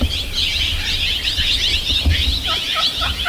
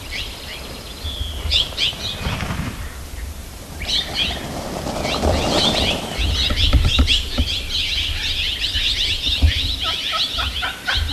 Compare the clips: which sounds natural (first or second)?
first